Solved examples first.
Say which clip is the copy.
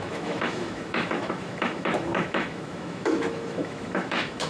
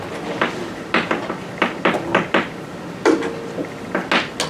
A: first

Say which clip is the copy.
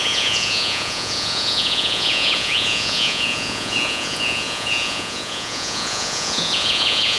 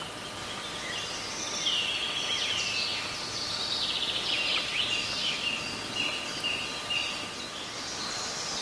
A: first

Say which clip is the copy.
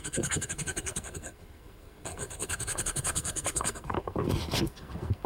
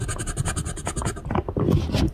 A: first